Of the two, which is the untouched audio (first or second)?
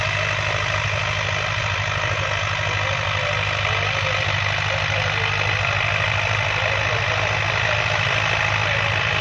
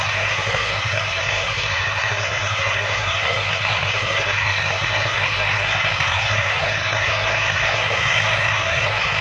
first